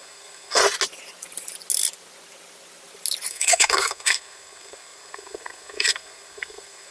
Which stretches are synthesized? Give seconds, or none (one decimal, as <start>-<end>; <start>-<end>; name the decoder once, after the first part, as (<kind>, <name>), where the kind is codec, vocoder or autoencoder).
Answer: 0.0-0.6 (codec, SNAC); 3.3-6.9